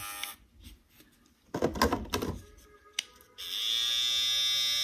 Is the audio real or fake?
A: real